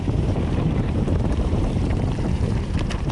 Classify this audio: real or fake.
fake